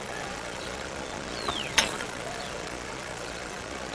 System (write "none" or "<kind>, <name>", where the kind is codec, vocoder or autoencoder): vocoder, Vocos